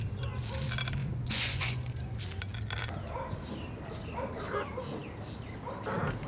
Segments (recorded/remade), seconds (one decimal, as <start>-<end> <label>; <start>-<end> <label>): 0.0-1.0 recorded; 1.0-2.1 remade; 2.1-6.3 recorded